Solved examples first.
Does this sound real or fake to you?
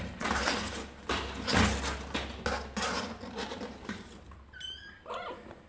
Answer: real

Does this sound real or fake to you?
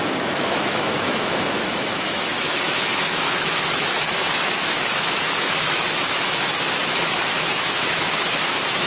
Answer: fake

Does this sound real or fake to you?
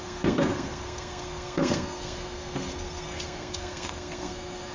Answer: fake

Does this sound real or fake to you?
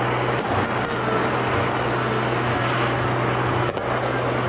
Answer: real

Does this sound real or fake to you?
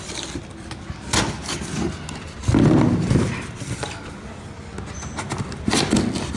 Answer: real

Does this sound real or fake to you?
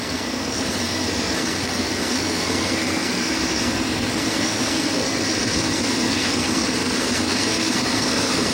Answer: fake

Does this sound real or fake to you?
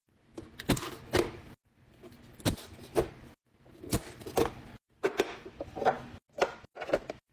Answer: real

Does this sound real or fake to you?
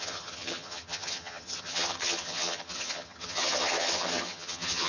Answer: fake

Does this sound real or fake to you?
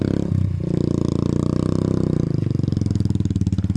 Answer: real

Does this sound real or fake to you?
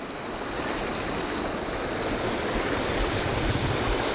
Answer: real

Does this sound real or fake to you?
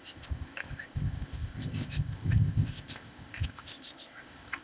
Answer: fake